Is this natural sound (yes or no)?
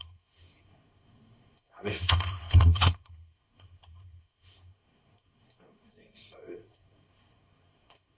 no